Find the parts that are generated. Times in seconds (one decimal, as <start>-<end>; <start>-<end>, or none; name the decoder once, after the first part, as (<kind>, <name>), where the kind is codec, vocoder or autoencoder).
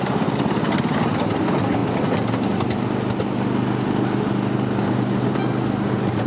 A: none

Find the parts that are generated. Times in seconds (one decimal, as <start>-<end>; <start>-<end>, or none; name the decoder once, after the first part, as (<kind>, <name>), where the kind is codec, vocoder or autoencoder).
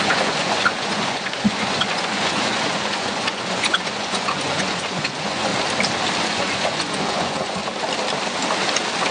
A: 0.0-5.5 (vocoder, Vocos); 6.2-7.6